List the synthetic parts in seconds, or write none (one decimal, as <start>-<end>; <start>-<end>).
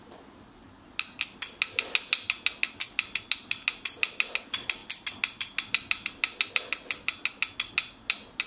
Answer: none